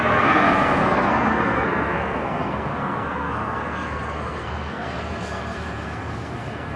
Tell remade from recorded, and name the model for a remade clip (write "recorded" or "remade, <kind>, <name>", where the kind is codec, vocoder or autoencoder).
remade, codec, SNAC